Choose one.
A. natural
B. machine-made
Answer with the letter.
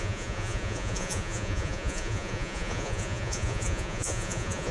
B